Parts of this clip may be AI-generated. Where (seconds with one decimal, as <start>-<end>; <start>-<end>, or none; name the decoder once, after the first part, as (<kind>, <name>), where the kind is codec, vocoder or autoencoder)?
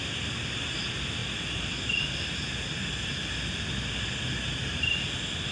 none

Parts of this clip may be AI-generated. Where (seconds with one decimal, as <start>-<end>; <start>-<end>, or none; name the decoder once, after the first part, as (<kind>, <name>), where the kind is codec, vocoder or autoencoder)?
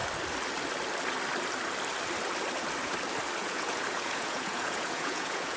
3.4-5.6 (vocoder, Vocos)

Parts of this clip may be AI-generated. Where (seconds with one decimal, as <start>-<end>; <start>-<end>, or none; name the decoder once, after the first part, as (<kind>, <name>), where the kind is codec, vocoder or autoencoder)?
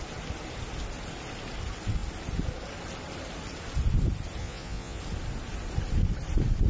4.4-5.0 (vocoder, Vocos)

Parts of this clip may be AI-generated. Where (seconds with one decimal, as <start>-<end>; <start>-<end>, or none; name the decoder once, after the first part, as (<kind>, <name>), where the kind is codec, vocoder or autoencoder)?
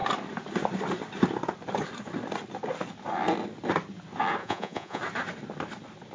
4.4-5.0 (vocoder, Vocos)